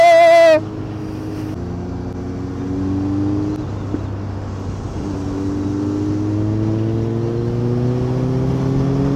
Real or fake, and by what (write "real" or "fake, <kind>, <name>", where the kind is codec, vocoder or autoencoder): real